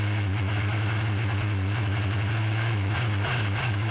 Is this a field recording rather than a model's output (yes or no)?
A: no